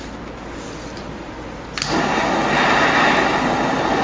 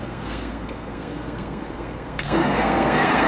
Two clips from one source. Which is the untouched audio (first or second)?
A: first